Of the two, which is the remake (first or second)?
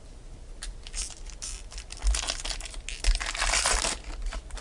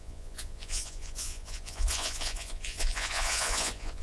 second